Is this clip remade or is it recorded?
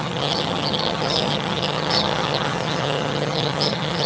remade